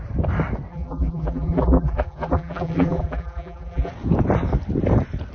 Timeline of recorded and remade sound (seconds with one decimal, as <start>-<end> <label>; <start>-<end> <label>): 0.0-0.7 recorded; 0.7-3.9 remade; 3.9-5.3 recorded